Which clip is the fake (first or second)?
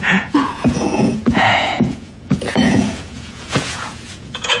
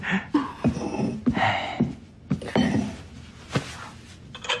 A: first